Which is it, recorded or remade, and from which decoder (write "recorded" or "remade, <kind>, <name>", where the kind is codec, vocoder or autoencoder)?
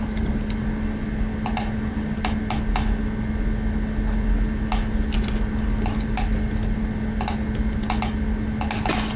recorded